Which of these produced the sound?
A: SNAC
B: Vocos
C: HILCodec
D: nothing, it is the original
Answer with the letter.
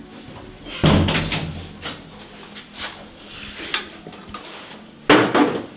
D